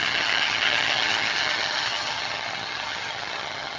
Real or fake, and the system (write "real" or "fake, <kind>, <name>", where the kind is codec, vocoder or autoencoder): fake, vocoder, HiFi-GAN